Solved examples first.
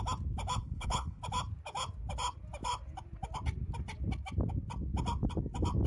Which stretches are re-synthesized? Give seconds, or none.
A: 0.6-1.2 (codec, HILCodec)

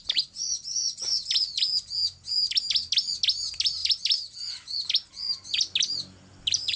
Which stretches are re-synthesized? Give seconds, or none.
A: 0.0-1.6 (vocoder, BigVGAN v2)

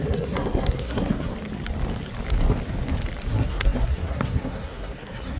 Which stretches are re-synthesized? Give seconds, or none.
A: 0.0-1.3 (codec, SNAC); 3.3-5.4

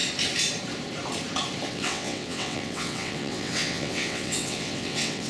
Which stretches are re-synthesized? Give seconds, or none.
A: 1.7-5.3 (vocoder, WaveNeXt)

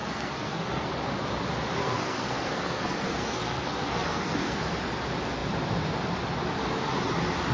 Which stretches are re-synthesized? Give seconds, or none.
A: 0.0-0.9 (codec, SNAC); 1.8-4.6